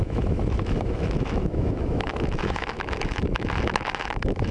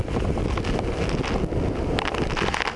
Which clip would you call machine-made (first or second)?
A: first